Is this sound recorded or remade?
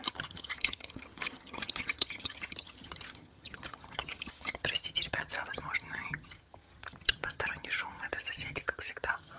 remade